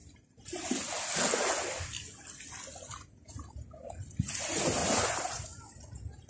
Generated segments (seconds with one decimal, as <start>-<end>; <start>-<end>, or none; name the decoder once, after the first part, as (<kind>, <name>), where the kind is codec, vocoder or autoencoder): 4.8-5.6 (vocoder, BigVGAN v2)